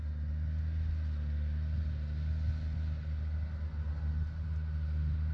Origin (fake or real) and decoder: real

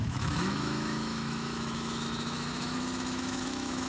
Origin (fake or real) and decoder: fake, autoencoder, DAC-VAE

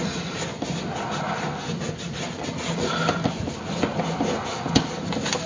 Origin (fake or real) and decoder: real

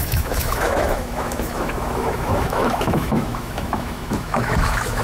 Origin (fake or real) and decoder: fake, autoencoder, DAC-VAE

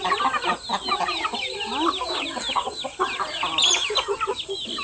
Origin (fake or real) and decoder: real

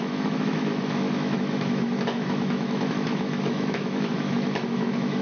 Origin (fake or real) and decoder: fake, autoencoder, DAC-VAE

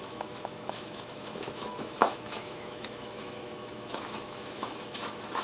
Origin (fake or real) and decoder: fake, autoencoder, DAC-VAE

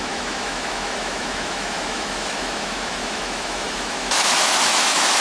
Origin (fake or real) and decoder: fake, autoencoder, DAC-VAE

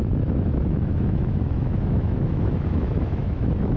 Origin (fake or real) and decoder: fake, autoencoder, DAC-VAE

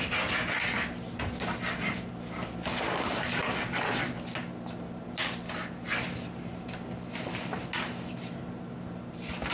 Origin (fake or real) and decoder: real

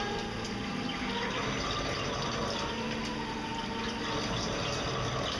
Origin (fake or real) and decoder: real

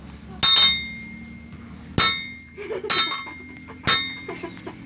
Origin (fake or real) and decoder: real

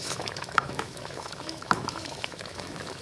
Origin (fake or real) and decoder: fake, autoencoder, DAC-VAE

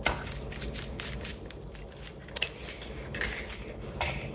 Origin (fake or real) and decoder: real